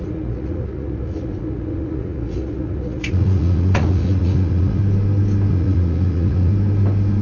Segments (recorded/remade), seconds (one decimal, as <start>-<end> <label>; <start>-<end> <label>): 0.0-4.8 remade; 4.8-5.5 recorded; 5.5-6.5 remade; 6.5-7.2 recorded